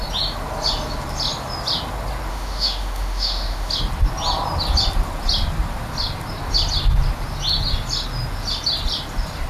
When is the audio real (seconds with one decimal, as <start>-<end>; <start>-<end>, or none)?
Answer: 0.0-2.3; 3.7-9.5